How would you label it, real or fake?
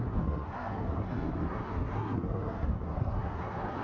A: fake